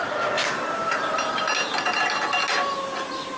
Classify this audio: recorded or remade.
recorded